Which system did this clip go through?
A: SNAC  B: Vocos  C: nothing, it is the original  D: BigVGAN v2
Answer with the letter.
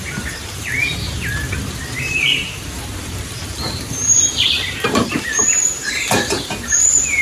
D